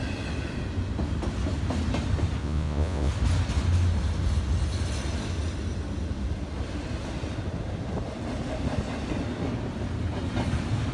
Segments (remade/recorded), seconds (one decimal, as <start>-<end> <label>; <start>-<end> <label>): 0.0-2.4 recorded; 2.4-3.1 remade; 3.1-10.9 recorded